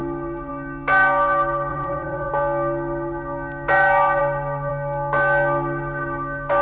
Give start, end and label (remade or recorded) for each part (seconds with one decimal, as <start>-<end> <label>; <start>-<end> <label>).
0.0-1.7 recorded; 1.7-2.3 remade; 2.3-6.6 recorded